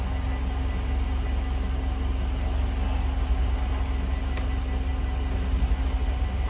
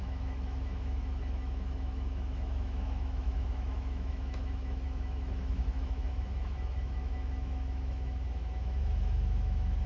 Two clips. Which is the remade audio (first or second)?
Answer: second